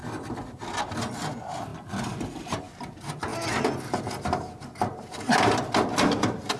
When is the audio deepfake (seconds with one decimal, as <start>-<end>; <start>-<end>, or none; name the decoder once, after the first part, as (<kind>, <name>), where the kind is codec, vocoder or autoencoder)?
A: none